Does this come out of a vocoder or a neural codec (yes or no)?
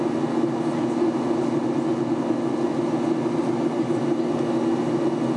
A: no